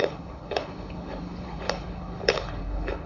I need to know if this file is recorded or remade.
remade